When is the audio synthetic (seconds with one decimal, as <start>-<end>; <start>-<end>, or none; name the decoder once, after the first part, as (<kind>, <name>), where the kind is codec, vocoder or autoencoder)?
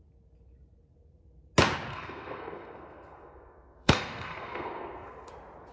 1.9-5.3 (codec, SNAC)